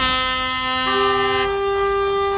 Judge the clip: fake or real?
real